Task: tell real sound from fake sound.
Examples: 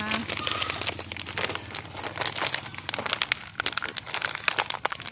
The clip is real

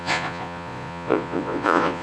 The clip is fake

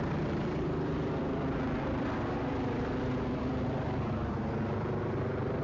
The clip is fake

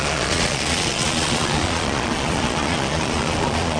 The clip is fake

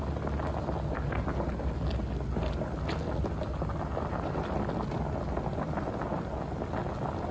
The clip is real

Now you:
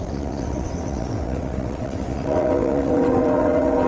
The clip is fake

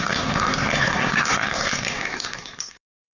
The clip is fake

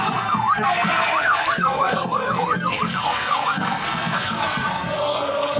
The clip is fake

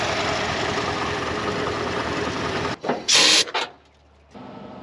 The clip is real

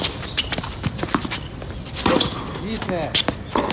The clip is real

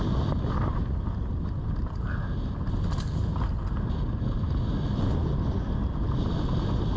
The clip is real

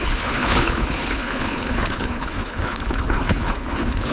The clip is fake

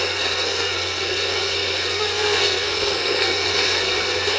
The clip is fake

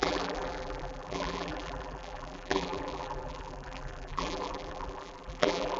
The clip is fake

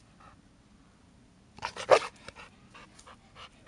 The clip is real